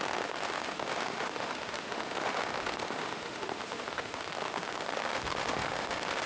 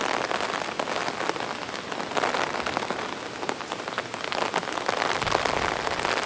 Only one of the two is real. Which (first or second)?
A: second